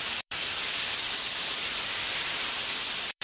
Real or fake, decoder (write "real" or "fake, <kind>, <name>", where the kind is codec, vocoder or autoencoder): fake, vocoder, BigVGAN v2